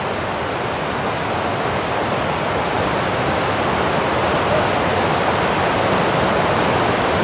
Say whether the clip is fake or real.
real